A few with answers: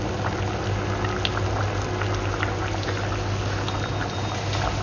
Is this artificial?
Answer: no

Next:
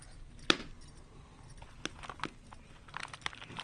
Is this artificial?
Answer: no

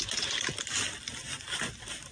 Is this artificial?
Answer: no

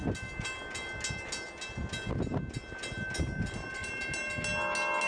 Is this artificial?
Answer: no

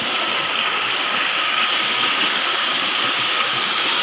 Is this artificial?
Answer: yes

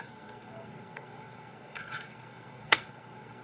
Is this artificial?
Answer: yes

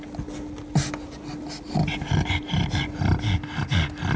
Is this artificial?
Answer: no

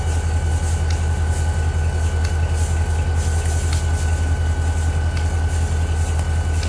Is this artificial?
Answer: no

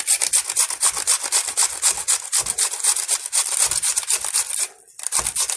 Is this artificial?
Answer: no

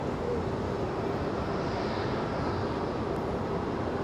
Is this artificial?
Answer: no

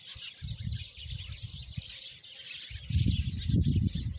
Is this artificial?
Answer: no